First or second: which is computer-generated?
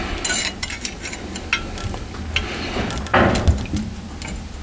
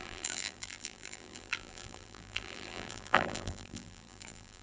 second